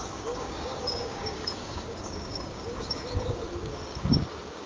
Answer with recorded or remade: remade